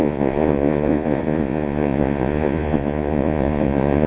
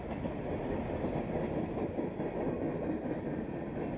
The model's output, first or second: first